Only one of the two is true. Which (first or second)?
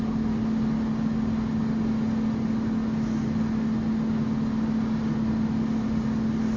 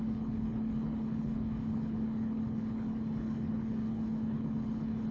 first